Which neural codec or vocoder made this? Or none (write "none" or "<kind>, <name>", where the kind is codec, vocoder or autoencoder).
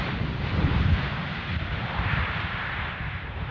vocoder, BigVGAN v2